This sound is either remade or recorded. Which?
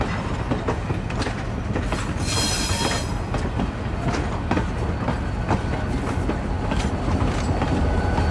recorded